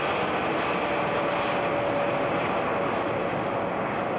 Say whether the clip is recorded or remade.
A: recorded